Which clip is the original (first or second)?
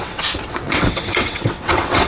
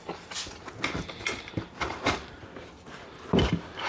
second